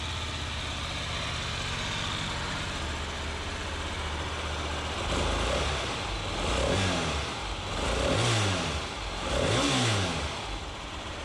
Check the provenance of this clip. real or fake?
real